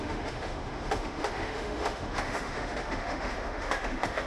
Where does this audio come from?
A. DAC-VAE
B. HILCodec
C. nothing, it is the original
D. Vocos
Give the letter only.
A